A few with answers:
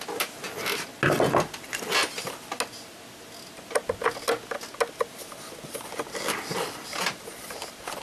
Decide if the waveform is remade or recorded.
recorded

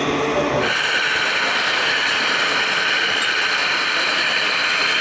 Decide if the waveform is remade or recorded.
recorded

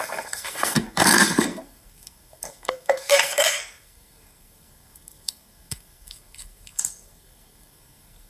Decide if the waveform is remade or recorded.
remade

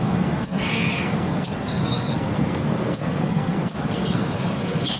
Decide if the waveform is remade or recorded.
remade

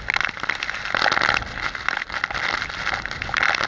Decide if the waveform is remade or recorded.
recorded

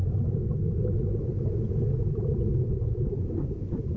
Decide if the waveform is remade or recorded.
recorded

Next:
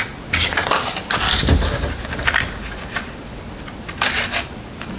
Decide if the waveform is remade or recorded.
recorded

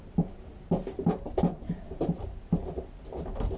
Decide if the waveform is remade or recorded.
recorded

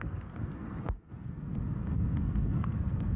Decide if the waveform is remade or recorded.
remade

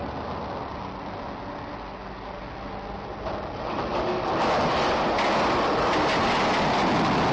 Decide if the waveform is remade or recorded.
recorded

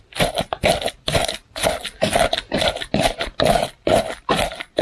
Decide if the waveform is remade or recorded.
recorded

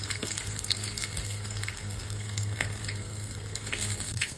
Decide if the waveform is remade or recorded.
remade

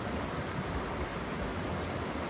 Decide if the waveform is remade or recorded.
recorded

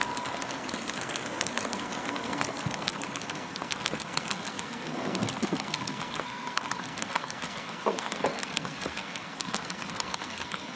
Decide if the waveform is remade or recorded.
remade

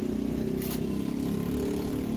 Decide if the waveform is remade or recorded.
recorded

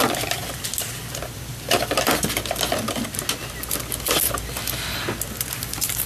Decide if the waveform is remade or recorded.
recorded